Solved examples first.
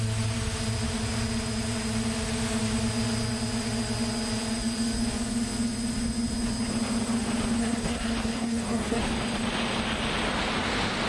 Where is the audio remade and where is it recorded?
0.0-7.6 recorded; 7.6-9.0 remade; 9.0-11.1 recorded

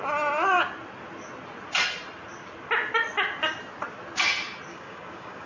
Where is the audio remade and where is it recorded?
0.0-4.7 recorded; 4.7-5.5 remade

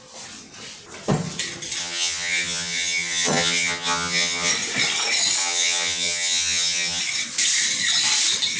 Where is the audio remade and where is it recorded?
0.0-1.8 recorded; 1.8-4.5 remade; 4.5-5.4 recorded; 5.4-7.0 remade; 7.0-8.6 recorded

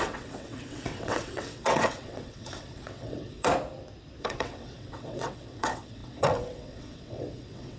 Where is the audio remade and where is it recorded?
0.0-3.5 remade; 3.5-4.2 recorded; 4.2-7.8 remade

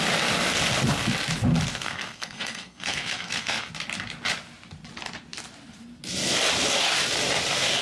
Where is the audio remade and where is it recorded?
0.0-1.7 recorded; 1.7-3.7 remade; 3.7-7.8 recorded

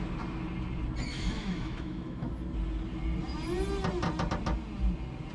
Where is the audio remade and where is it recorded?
0.0-1.1 recorded; 1.1-2.3 remade; 2.3-5.3 recorded